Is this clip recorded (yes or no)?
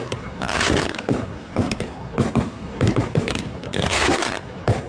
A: no